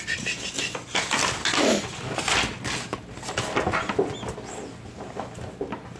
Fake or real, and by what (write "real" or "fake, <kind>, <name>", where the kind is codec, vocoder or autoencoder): real